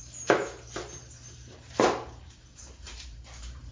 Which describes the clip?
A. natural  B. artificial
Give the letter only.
B